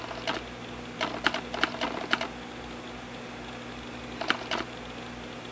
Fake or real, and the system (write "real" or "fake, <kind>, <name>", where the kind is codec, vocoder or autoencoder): real